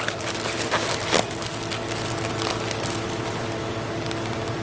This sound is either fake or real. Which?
real